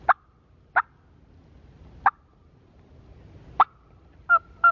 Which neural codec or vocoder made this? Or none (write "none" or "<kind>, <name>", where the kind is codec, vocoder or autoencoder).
none